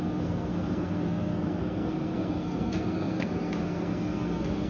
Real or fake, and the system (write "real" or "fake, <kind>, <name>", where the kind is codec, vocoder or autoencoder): fake, codec, SNAC